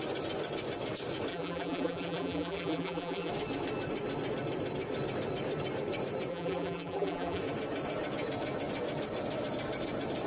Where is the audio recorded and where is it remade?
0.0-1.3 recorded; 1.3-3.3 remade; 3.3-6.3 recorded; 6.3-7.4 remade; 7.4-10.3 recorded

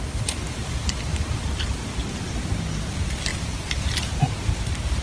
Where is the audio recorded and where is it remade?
0.0-0.6 recorded; 0.6-1.5 remade; 1.5-2.0 recorded; 2.0-2.5 remade; 2.5-3.3 recorded; 3.3-4.2 remade; 4.2-5.0 recorded

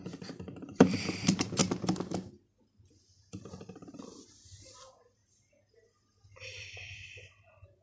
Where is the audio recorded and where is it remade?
0.0-1.6 remade; 1.6-3.0 recorded; 3.0-5.2 remade; 5.2-7.3 recorded; 7.3-7.8 remade

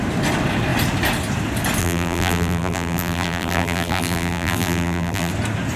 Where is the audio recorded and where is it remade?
0.0-1.8 recorded; 1.8-5.3 remade; 5.3-5.8 recorded

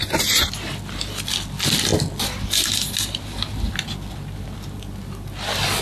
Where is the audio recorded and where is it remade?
0.0-5.8 recorded

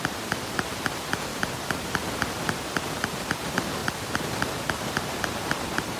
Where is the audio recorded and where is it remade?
0.0-1.3 recorded; 1.3-1.9 remade; 1.9-3.8 recorded; 3.8-6.0 remade

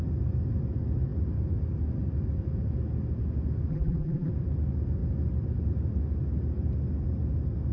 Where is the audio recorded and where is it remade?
0.0-3.7 recorded; 3.7-4.3 remade; 4.3-7.7 recorded